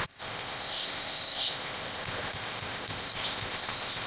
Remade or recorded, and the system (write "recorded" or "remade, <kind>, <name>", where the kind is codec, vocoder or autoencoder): remade, codec, ZipCodec